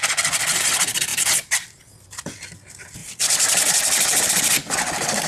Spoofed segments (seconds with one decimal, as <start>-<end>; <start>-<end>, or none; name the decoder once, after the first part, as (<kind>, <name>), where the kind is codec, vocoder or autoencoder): 1.1-1.8 (vocoder, BigVGAN v2); 3.0-5.3